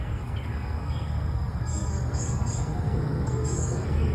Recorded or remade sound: remade